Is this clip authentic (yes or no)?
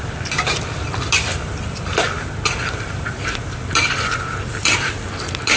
no